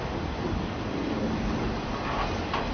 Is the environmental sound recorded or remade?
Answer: recorded